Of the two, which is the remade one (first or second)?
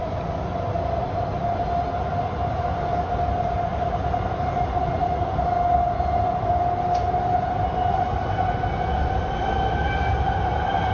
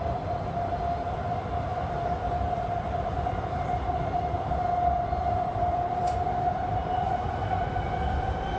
second